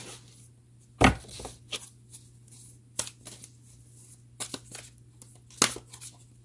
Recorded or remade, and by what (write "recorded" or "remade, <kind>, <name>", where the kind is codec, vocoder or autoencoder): recorded